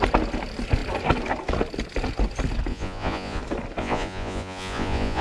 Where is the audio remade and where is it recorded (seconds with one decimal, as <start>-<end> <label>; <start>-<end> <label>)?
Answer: 0.0-2.7 recorded; 2.7-3.4 remade; 3.4-3.8 recorded; 3.8-5.2 remade